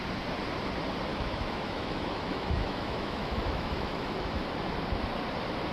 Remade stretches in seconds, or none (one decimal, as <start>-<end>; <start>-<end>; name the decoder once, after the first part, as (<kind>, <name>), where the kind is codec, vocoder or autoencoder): 1.1-4.4 (autoencoder, DAC-VAE)